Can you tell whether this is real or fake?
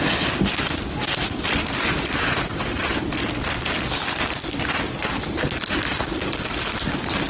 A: real